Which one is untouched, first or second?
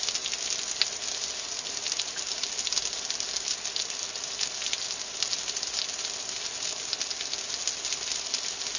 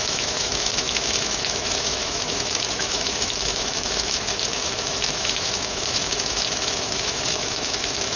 first